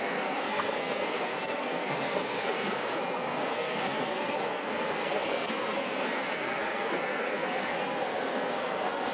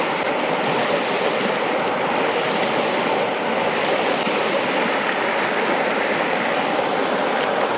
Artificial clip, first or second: first